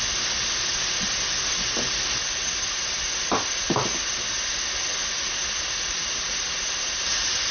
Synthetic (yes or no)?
no